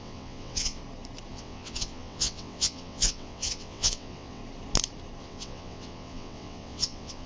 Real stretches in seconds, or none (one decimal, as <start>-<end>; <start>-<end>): 0.8-1.3; 4.4-5.2